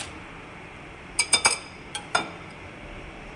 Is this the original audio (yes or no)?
no